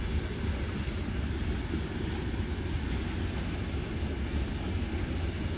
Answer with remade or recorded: recorded